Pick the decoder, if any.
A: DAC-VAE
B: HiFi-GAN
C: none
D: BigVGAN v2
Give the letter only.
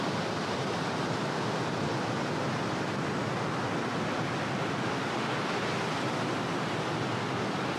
C